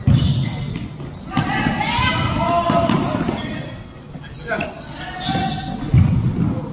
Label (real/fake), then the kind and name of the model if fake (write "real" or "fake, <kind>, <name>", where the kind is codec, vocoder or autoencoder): real